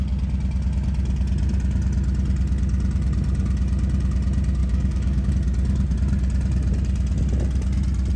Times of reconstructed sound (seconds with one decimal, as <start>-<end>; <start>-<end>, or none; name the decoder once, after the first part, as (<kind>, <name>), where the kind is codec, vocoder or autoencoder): 4.6-5.3 (codec, DAC)